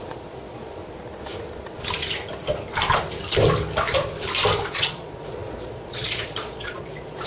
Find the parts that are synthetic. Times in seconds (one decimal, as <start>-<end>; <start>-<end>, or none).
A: 0.0-0.8; 4.7-7.3